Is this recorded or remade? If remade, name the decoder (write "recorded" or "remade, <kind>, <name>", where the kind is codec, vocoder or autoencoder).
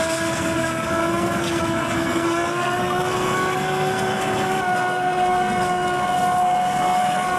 remade, codec, SNAC